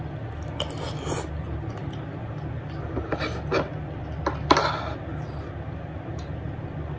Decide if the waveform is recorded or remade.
recorded